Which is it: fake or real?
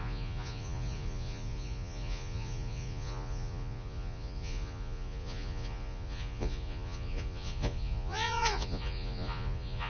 fake